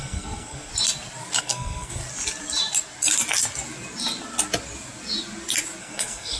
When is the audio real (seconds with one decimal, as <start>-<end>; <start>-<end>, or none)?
0.7-1.4; 2.0-5.8